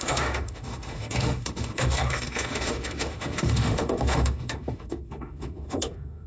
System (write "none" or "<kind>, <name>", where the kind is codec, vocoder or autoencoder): autoencoder, DAC-VAE